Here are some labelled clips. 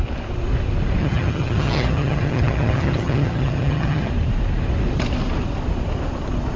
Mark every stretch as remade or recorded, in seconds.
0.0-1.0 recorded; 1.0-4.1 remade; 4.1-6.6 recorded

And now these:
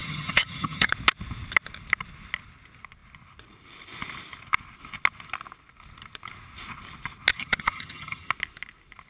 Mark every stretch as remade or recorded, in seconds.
0.0-0.9 remade; 0.9-7.3 recorded; 7.3-8.3 remade; 8.3-9.1 recorded

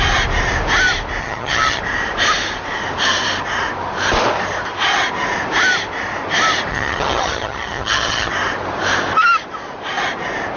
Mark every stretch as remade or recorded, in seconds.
0.0-1.2 recorded; 1.2-1.8 remade; 1.8-6.7 recorded; 6.7-8.3 remade; 8.3-10.6 recorded

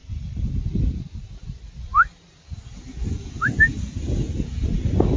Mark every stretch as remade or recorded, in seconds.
0.0-5.2 recorded